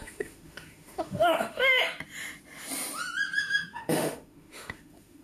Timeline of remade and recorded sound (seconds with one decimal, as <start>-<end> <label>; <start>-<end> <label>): 0.0-1.8 remade; 1.8-3.4 recorded; 3.4-5.2 remade